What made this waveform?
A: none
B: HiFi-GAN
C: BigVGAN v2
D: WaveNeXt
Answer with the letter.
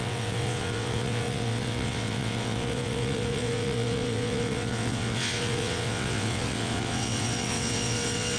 D